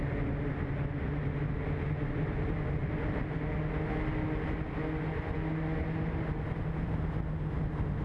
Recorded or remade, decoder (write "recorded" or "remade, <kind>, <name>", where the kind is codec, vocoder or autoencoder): recorded